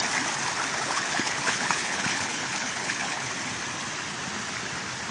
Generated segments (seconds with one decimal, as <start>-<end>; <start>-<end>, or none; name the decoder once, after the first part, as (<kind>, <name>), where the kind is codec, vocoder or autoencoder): 0.7-3.3 (codec, HILCodec)